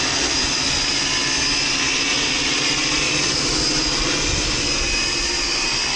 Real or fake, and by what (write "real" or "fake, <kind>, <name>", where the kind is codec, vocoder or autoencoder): real